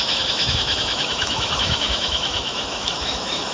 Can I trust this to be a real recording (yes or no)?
no